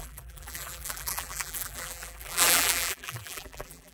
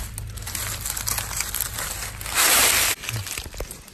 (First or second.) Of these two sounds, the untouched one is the second